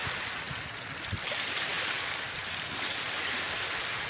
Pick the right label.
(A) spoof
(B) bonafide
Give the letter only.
B